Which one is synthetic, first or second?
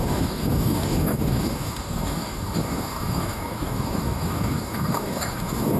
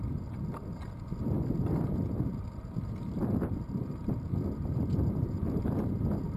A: first